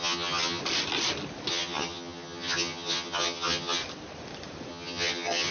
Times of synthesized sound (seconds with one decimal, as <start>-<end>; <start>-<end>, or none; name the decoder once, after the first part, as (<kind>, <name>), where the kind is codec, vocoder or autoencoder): 0.0-0.6 (vocoder, HiFi-GAN); 1.5-3.8; 4.7-5.5